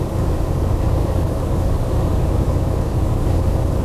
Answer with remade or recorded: remade